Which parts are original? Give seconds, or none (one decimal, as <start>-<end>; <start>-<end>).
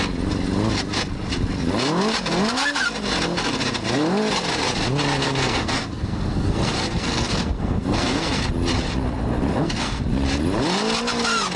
0.0-5.2; 8.5-9.5; 10.0-11.6